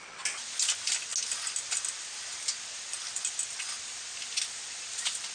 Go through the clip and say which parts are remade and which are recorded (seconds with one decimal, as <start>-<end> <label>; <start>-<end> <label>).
0.0-5.3 recorded